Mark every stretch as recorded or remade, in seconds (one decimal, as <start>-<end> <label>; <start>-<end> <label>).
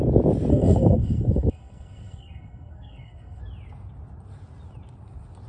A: 0.0-0.5 recorded; 0.5-3.4 remade; 3.4-5.5 recorded